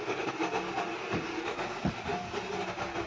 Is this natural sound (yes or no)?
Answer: yes